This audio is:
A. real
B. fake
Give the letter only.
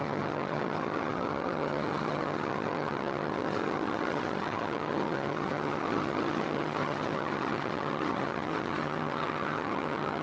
B